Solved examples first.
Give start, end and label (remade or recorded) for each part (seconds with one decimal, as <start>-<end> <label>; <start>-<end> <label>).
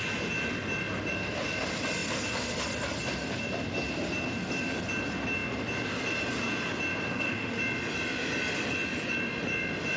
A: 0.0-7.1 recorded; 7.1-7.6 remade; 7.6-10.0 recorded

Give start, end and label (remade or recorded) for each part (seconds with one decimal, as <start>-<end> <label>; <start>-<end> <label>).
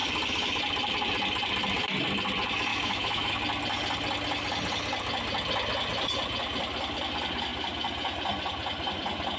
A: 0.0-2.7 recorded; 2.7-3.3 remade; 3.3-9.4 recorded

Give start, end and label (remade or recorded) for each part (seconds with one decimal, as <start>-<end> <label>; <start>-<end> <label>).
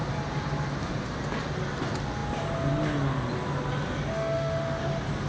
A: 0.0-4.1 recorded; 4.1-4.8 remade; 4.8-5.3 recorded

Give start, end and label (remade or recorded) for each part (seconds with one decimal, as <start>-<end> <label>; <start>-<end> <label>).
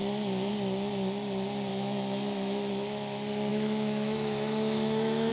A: 0.0-1.7 recorded; 1.7-2.7 remade; 2.7-3.5 recorded; 3.5-5.3 remade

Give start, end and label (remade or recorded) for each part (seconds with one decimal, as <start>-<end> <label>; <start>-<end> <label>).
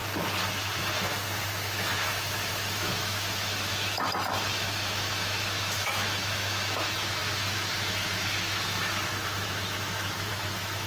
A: 0.0-0.8 recorded; 0.8-10.9 remade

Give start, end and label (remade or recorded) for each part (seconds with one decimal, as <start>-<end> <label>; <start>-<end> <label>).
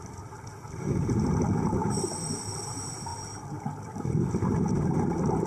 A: 0.0-5.5 recorded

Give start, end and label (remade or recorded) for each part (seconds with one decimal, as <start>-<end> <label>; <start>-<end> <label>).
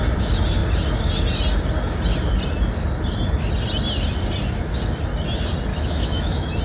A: 0.0-5.7 recorded; 5.7-6.6 remade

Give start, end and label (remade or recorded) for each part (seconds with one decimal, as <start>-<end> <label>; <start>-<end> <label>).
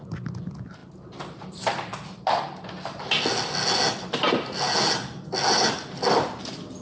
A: 0.0-6.8 recorded